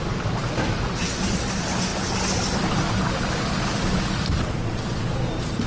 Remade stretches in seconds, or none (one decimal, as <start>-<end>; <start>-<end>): none